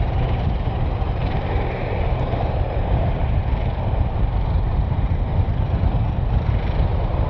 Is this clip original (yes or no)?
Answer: no